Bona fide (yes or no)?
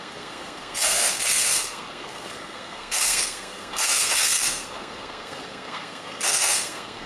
no